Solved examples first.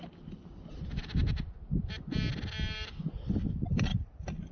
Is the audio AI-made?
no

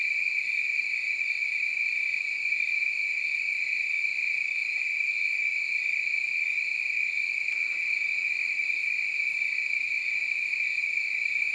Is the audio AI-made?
no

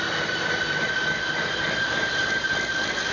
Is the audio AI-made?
no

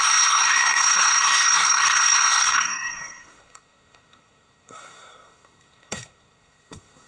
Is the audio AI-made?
yes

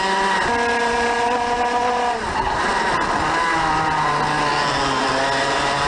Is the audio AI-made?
no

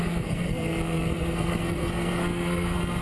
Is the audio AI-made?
yes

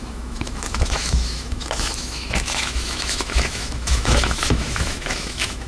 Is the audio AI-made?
yes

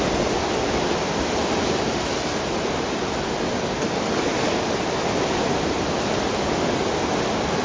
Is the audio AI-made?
no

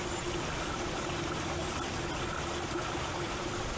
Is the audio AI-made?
no